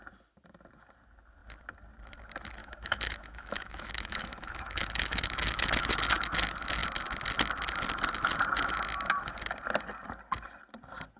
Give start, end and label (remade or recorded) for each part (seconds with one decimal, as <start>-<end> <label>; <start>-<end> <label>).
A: 0.0-2.6 recorded; 2.6-5.9 remade; 5.9-11.2 recorded